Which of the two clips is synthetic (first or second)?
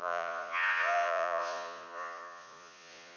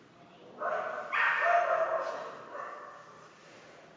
first